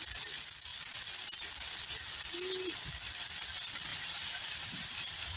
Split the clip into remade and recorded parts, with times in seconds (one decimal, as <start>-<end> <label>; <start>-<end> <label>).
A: 0.0-3.9 recorded; 3.9-5.4 remade